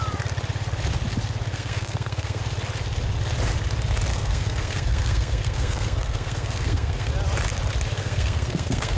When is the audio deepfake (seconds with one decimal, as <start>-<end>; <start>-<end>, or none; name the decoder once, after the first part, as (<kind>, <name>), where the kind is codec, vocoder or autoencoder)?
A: 1.5-2.4 (codec, SNAC); 4.1-7.1; 8.0-9.0